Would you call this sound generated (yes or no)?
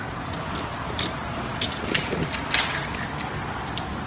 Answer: no